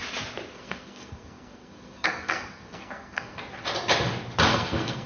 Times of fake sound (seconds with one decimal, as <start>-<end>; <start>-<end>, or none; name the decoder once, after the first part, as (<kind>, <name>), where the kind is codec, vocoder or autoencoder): 0.5-3.4 (codec, SNAC); 4.5-5.1